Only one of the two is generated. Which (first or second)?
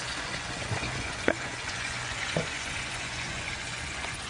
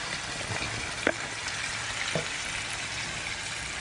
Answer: first